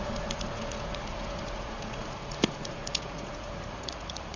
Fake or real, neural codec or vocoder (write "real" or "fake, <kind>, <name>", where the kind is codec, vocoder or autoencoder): fake, vocoder, Vocos